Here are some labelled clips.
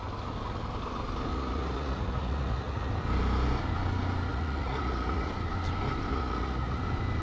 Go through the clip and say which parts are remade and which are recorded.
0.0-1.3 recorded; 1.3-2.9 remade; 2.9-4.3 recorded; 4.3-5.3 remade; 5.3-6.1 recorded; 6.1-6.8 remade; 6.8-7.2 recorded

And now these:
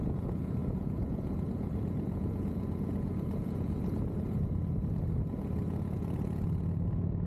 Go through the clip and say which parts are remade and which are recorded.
0.0-7.3 remade

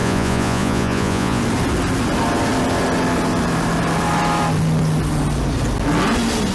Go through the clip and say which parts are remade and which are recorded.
0.0-1.4 remade; 1.4-6.5 recorded

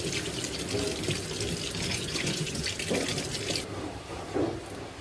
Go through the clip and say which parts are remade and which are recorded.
0.0-1.9 recorded; 1.9-2.6 remade; 2.6-5.0 recorded

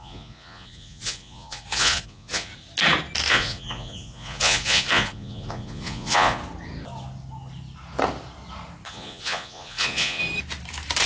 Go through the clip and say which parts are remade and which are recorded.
0.0-2.5 remade; 2.5-3.3 recorded; 3.3-6.4 remade; 6.4-8.9 recorded; 8.9-10.2 remade; 10.2-11.1 recorded

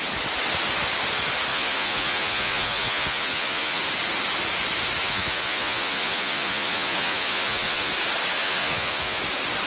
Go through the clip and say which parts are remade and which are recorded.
0.0-1.5 recorded; 1.5-3.8 remade; 3.8-5.0 recorded; 5.0-7.9 remade; 7.9-8.4 recorded; 8.4-9.2 remade; 9.2-9.7 recorded

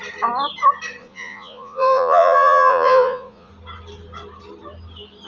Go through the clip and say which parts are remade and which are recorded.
0.0-1.0 recorded; 1.0-3.5 remade; 3.5-5.3 recorded

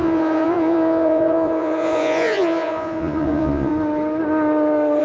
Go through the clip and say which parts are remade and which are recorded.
0.0-3.7 remade; 3.7-5.0 recorded